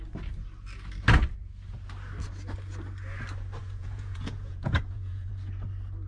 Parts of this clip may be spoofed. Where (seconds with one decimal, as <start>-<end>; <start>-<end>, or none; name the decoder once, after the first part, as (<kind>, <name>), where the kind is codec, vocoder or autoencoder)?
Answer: 3.6-5.3 (vocoder, Vocos)